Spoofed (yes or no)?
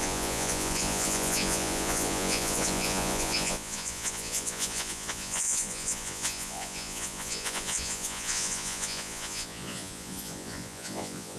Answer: yes